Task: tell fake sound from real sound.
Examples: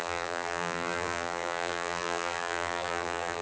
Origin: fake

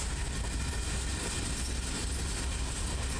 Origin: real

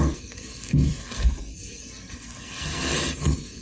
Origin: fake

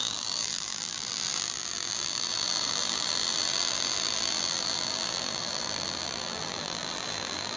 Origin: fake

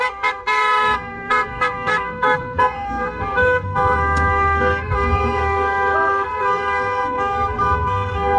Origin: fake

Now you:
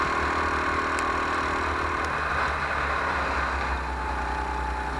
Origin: real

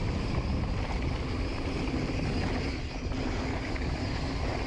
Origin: real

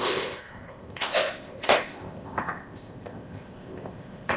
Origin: fake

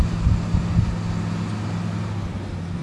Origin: real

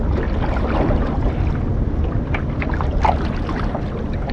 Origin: real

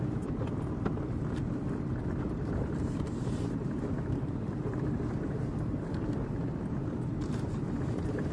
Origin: fake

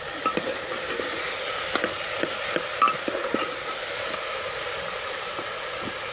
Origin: real